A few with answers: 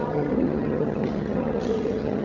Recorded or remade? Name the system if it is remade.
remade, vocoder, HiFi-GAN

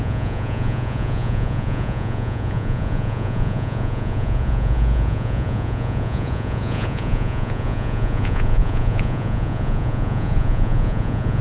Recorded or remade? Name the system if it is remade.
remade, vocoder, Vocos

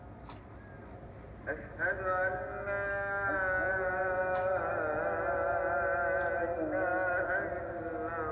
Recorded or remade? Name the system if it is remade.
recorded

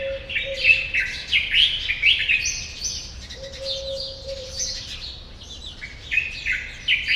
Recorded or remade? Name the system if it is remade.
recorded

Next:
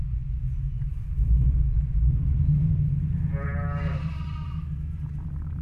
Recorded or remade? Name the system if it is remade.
remade, vocoder, BigVGAN v2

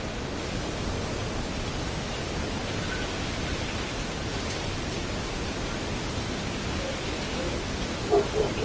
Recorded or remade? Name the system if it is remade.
recorded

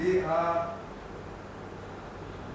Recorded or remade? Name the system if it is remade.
recorded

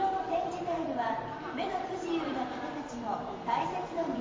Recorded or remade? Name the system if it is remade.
remade, vocoder, BigVGAN v2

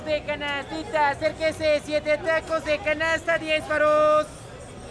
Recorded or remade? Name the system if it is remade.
recorded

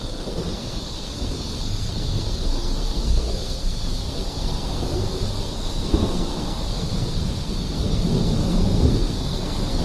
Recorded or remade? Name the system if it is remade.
remade, codec, SNAC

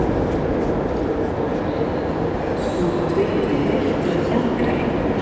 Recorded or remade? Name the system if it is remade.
recorded